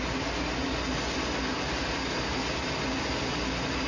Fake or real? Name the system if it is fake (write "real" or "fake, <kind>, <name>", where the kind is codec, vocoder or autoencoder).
real